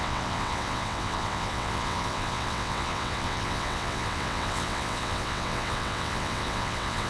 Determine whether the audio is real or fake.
fake